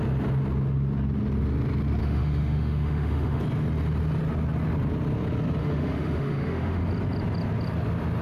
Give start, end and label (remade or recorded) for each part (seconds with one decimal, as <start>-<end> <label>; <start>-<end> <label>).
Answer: 0.0-2.0 recorded; 2.0-3.4 remade; 3.4-5.6 recorded; 5.6-6.8 remade; 6.8-8.2 recorded